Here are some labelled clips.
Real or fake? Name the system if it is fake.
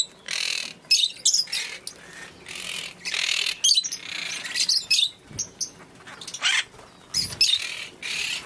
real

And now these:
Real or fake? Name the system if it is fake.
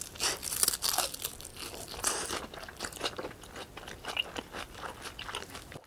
real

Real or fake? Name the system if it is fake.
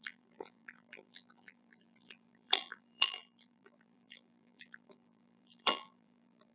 fake, vocoder, BigVGAN v2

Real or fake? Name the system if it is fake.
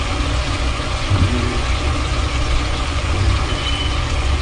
fake, vocoder, Vocos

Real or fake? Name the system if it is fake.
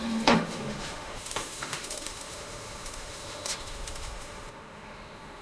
fake, autoencoder, DAC-VAE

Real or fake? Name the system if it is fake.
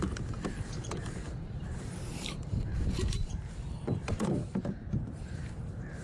fake, vocoder, BigVGAN v2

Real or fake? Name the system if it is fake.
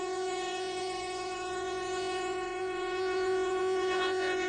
fake, vocoder, Vocos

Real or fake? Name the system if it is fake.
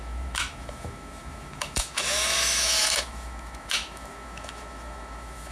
fake, autoencoder, DAC-VAE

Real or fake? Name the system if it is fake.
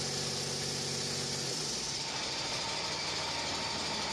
real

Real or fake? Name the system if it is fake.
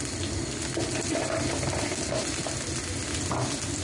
real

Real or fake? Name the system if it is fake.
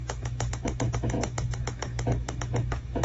fake, autoencoder, DAC-VAE